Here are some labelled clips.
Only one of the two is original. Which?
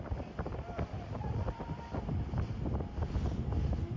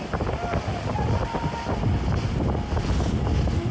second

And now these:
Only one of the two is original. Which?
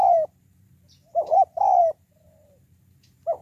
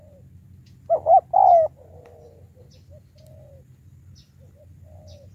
second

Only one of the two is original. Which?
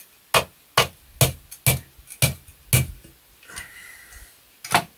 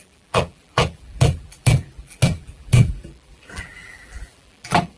first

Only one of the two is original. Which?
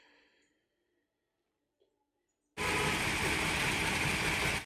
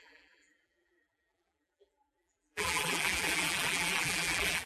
first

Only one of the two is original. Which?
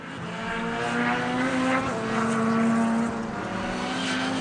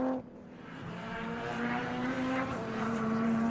first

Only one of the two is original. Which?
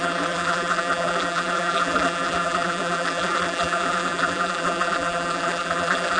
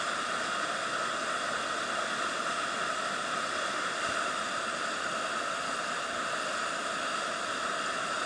second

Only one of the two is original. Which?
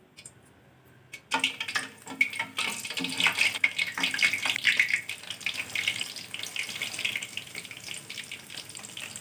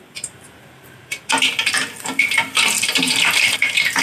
first